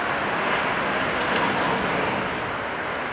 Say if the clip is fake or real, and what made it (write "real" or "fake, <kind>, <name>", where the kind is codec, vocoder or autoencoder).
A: real